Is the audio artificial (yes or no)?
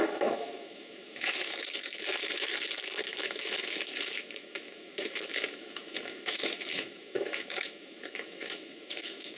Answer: yes